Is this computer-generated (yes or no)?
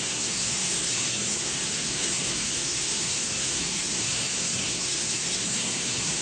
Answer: yes